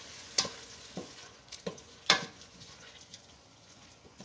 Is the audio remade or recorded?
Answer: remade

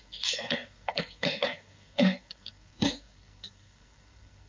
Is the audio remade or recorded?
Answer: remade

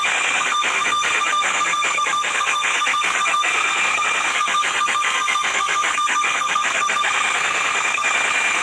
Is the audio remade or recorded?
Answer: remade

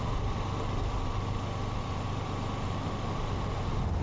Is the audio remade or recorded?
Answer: recorded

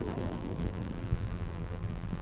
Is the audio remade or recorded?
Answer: remade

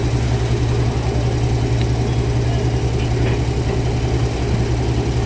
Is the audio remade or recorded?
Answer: recorded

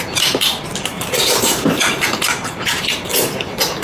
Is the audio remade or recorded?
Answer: remade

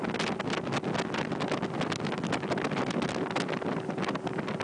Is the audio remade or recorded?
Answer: recorded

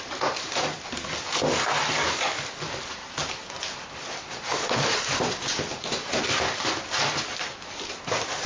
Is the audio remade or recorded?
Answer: recorded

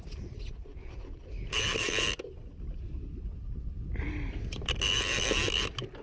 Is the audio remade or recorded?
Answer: recorded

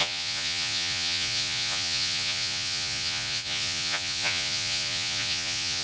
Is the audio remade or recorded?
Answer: remade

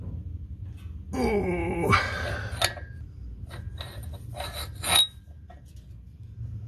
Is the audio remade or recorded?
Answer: recorded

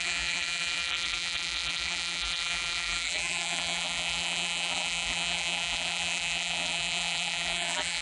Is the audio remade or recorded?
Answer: remade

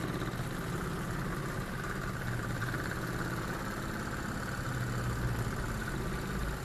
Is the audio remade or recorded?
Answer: recorded